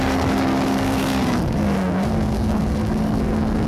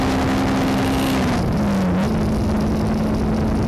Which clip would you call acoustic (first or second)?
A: second